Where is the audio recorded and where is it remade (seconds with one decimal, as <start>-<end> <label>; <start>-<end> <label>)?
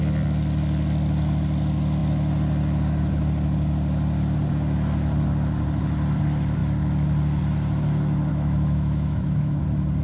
0.0-8.3 recorded; 8.3-9.6 remade; 9.6-10.0 recorded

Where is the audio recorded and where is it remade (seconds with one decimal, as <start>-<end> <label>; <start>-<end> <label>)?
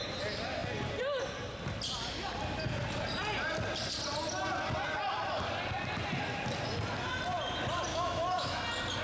0.0-7.9 recorded; 7.9-8.6 remade; 8.6-9.0 recorded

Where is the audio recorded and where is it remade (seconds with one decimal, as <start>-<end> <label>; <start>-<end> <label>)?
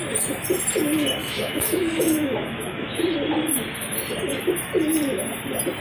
0.0-1.2 recorded; 1.2-3.0 remade; 3.0-5.8 recorded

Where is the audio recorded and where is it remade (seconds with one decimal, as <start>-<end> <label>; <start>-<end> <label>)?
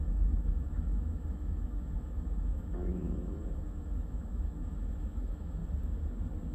0.0-5.6 remade; 5.6-6.5 recorded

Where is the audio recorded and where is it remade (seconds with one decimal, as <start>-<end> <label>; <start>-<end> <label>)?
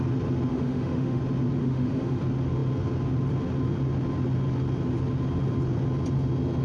0.0-0.5 recorded; 0.5-1.2 remade; 1.2-1.6 recorded; 1.6-2.2 remade; 2.2-6.6 recorded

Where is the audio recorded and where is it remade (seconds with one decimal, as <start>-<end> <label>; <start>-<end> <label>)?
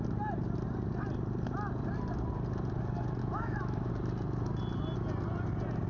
0.0-3.2 recorded; 3.2-3.9 remade; 3.9-5.9 recorded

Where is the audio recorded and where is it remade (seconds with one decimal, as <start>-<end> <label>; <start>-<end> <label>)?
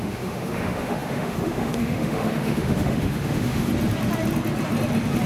0.0-3.7 remade; 3.7-5.3 recorded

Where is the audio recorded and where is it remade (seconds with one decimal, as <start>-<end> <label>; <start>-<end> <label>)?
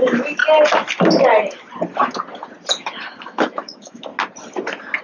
0.0-0.4 remade; 0.4-3.2 recorded; 3.2-4.1 remade; 4.1-5.0 recorded